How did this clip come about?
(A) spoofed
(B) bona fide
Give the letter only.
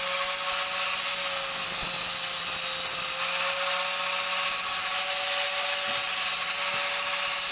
B